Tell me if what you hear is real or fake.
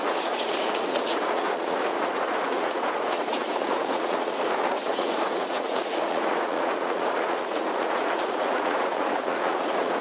fake